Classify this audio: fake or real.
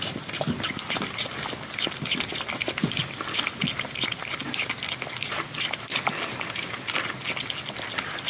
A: real